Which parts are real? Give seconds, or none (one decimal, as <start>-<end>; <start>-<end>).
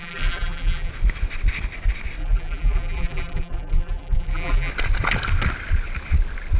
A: 0.9-2.2; 4.7-6.6